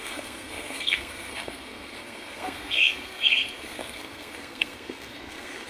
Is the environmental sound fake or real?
fake